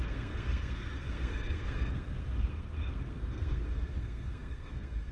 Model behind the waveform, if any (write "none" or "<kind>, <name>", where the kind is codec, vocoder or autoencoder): codec, SNAC